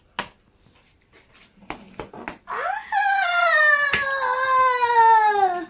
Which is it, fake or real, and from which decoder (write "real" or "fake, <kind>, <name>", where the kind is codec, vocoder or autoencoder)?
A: real